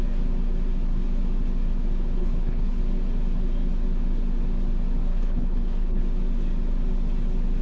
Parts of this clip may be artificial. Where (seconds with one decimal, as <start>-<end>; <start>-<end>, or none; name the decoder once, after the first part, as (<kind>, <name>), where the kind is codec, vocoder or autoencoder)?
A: 2.2-2.8 (codec, HILCodec); 5.1-6.0